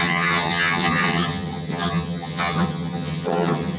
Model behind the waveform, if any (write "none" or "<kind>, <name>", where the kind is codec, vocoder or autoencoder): vocoder, HiFi-GAN